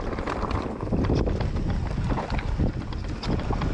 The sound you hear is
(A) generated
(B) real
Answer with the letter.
B